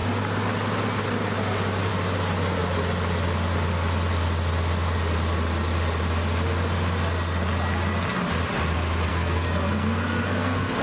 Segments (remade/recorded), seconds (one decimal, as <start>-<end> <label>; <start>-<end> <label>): 0.0-9.1 recorded; 9.1-10.8 remade